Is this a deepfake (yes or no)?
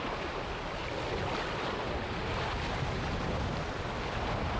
no